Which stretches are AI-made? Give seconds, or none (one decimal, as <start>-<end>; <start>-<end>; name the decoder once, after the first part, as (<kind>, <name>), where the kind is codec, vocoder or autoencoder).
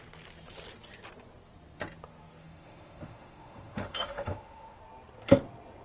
2.4-4.8 (autoencoder, DAC-VAE)